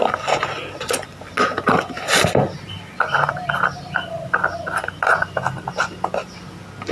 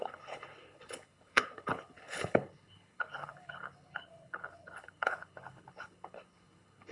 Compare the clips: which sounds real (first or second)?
first